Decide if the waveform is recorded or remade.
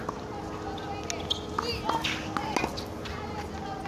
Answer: recorded